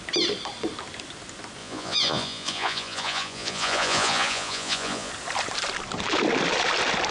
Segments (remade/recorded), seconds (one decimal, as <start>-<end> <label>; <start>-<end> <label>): 0.0-1.6 recorded; 1.6-5.1 remade; 5.1-7.1 recorded